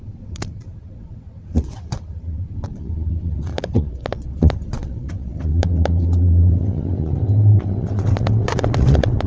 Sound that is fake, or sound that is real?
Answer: fake